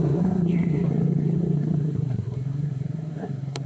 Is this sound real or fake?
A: fake